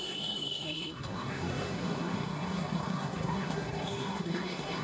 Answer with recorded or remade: remade